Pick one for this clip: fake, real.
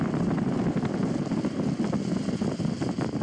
real